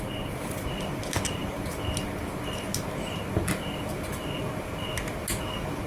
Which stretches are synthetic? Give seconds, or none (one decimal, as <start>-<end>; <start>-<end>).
none